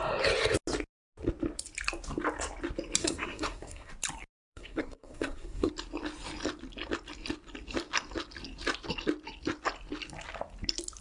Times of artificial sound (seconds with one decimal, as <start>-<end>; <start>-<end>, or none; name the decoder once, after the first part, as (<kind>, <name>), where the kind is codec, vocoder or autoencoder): 3.0-3.9 (codec, SNAC); 4.4-5.7